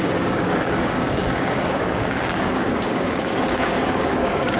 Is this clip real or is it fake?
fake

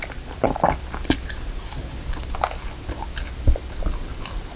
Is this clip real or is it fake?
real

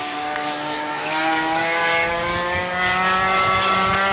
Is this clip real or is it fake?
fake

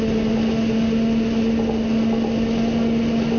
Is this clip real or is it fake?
real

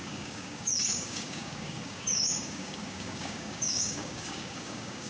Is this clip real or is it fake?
fake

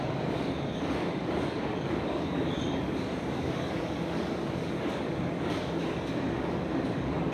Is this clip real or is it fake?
fake